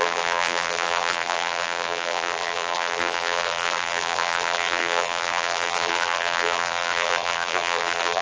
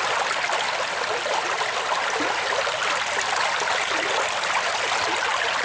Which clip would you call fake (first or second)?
first